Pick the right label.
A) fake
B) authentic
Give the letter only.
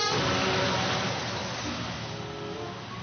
B